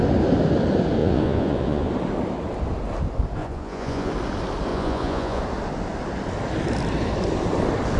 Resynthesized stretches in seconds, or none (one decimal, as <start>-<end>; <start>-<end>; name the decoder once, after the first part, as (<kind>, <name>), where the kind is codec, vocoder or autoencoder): 1.0-1.9 (vocoder, Vocos); 3.4-4.1; 4.7-5.4